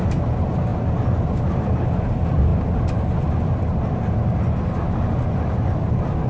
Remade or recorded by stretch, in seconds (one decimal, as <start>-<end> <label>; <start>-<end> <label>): 0.0-6.3 recorded